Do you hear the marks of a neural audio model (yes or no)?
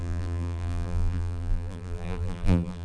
yes